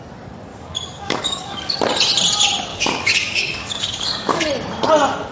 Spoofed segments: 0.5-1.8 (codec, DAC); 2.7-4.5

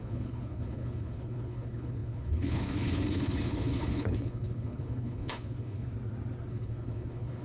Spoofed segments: 0.0-5.9 (codec, HILCodec); 6.5-7.4

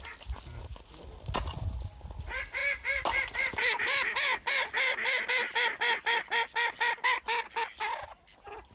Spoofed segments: none

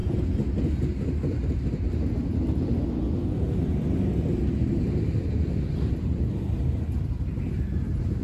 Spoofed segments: 4.6-8.2 (vocoder, BigVGAN v2)